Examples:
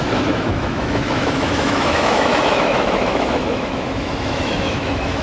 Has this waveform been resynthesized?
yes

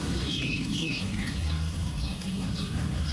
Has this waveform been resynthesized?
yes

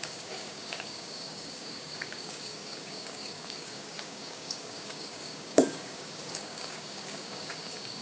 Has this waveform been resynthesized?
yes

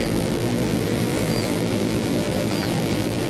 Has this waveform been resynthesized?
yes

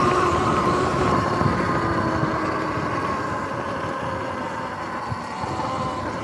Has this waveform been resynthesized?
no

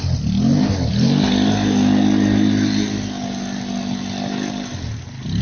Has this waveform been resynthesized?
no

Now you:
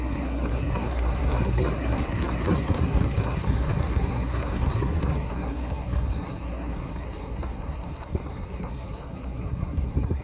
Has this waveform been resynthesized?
yes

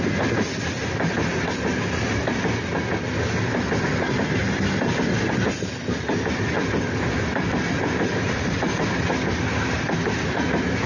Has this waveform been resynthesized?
no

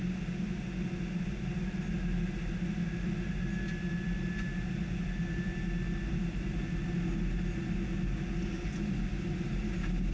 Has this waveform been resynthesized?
no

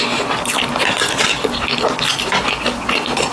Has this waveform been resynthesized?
no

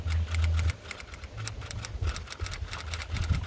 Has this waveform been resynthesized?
no